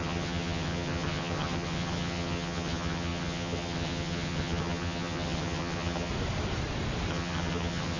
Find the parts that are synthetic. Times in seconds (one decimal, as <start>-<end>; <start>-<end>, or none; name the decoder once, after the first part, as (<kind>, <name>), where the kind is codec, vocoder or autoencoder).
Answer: 0.0-6.1 (vocoder, HiFi-GAN); 7.1-8.0

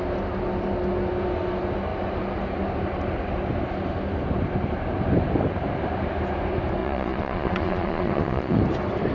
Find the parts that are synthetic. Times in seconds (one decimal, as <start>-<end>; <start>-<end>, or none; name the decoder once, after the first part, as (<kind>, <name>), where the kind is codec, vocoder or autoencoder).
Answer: 6.8-8.6 (vocoder, Vocos)

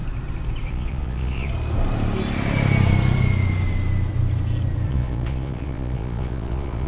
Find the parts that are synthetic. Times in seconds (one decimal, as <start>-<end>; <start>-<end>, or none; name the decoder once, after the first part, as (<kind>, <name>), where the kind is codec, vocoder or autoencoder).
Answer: 0.7-1.5 (vocoder, Vocos); 4.9-6.9